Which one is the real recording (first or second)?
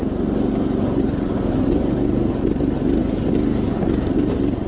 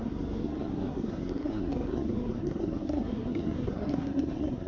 first